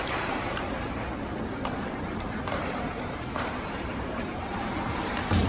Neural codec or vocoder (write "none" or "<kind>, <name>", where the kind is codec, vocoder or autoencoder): vocoder, BigVGAN v2